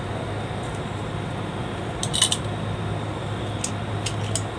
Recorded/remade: recorded